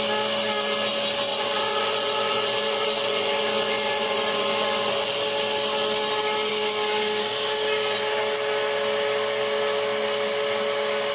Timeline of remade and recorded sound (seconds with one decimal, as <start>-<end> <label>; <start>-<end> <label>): 0.0-1.3 recorded; 1.3-5.1 remade; 5.1-11.1 recorded